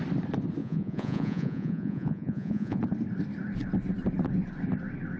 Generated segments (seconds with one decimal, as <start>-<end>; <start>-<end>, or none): 0.6-2.8